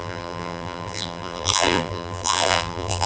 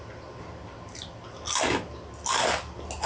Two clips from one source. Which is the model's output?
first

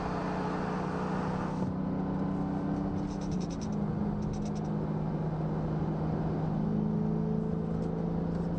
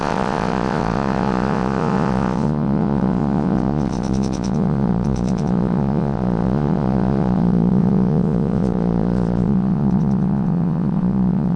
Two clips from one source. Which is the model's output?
second